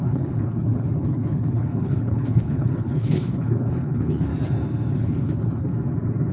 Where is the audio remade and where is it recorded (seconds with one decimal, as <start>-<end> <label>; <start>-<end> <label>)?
0.0-4.3 remade; 4.3-4.9 recorded; 4.9-5.7 remade; 5.7-6.3 recorded